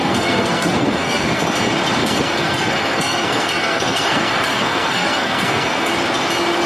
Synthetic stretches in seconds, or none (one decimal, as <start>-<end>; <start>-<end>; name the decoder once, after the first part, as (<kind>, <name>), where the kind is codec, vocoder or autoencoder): 0.0-1.4 (codec, SNAC); 2.0-5.9